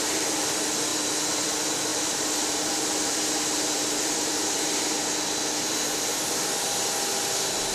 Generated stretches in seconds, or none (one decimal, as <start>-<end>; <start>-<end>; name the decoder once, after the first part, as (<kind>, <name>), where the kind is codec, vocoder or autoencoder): 1.9-5.0 (vocoder, BigVGAN v2)